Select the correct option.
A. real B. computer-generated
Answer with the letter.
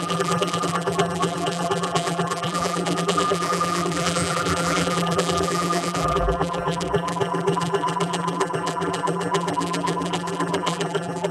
B